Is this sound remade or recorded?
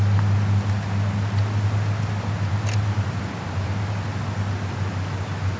recorded